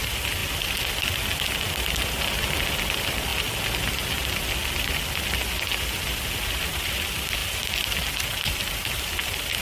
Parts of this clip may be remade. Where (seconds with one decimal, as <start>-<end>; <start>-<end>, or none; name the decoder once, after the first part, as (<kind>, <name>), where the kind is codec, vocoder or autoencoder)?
0.0-0.4 (vocoder, BigVGAN v2); 2.9-3.3; 6.5-7.4; 8.2-9.6